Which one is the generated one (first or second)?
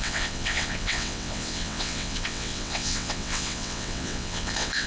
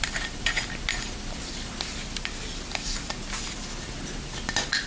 first